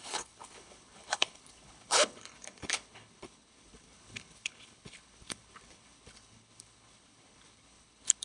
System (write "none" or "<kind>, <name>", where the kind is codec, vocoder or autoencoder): codec, HILCodec